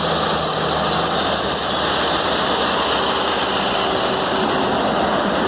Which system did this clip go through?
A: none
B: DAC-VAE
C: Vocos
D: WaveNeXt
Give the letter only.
A